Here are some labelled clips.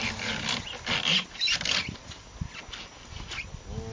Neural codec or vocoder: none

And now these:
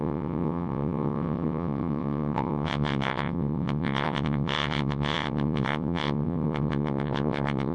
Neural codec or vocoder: vocoder, WaveNeXt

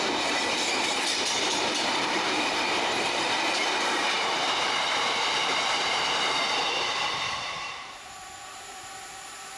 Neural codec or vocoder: vocoder, BigVGAN v2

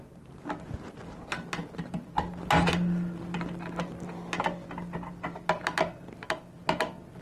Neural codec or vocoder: none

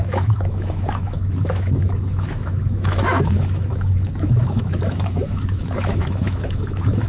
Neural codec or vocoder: autoencoder, DAC-VAE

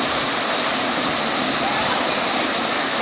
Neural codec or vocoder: none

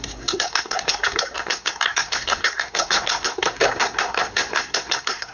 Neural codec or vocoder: codec, SNAC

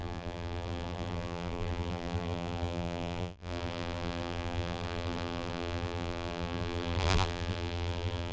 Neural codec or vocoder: vocoder, BigVGAN v2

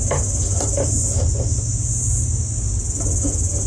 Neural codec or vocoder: none